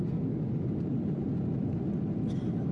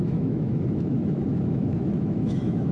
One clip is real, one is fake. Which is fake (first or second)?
second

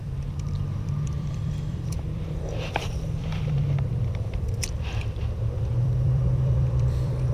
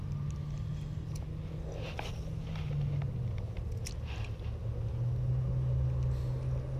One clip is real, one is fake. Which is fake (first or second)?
first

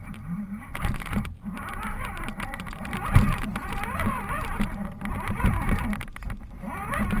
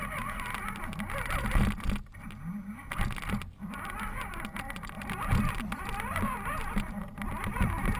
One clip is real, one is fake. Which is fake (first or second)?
first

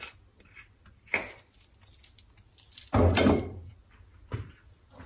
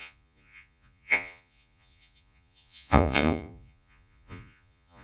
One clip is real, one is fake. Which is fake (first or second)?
second